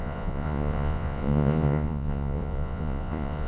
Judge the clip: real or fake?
fake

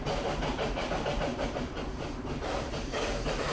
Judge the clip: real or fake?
real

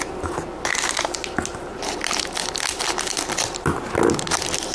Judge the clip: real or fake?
real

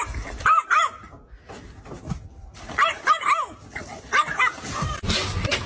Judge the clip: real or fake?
real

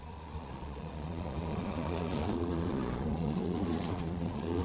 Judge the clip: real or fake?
fake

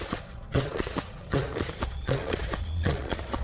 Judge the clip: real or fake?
fake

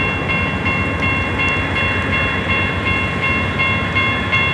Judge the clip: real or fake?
real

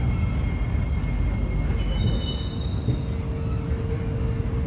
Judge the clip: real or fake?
real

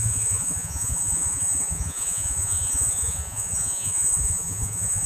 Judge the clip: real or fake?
fake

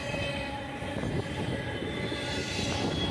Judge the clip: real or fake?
real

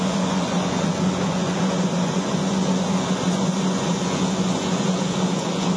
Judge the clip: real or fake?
fake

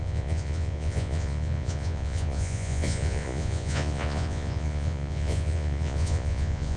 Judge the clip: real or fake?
fake